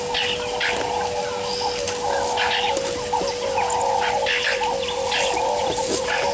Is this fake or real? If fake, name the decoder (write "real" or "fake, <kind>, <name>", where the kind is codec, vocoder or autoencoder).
real